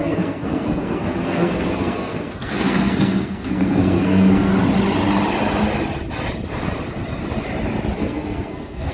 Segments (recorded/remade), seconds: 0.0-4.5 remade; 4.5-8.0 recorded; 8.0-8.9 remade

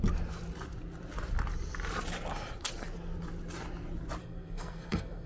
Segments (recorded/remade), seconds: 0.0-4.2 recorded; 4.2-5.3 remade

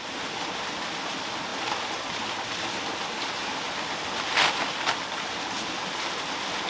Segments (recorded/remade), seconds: 0.0-6.7 recorded

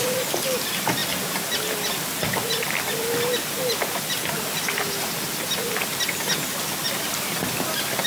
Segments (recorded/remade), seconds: 0.0-8.1 recorded

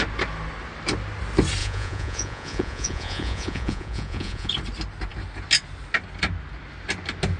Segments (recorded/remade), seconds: 0.0-1.6 recorded; 1.6-4.5 remade; 4.5-7.4 recorded